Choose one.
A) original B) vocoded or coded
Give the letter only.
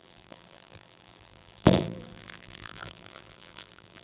B